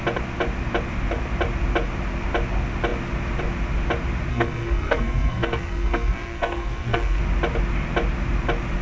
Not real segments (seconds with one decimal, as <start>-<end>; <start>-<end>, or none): 4.3-7.2